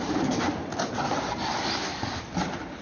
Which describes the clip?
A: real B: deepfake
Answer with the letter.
B